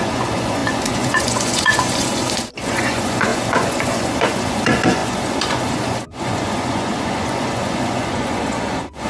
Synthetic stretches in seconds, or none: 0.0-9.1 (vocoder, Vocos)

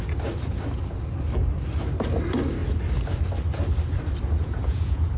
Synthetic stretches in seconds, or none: 4.4-5.2 (vocoder, Vocos)